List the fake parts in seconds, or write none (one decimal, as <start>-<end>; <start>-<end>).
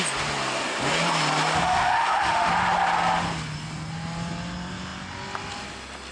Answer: 1.6-2.5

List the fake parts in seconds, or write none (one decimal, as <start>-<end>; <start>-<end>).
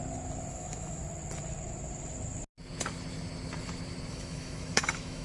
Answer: 0.5-1.0; 4.1-5.2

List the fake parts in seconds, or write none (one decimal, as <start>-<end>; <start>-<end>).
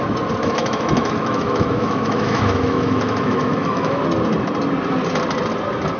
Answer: 0.4-4.0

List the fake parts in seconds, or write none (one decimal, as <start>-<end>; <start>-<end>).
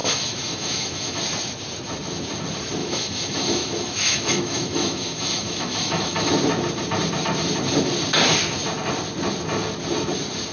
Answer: 0.0-1.2; 2.8-6.3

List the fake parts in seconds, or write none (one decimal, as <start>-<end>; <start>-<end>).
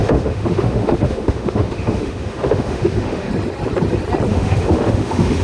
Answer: 0.0-3.3; 4.3-5.4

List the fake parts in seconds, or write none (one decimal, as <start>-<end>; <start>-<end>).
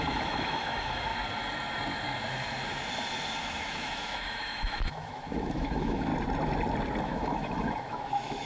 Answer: 0.0-1.1; 3.4-6.1; 7.0-8.5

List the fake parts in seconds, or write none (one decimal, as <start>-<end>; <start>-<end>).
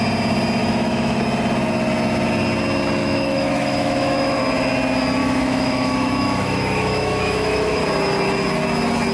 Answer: 0.6-1.2; 3.0-4.4; 5.2-7.8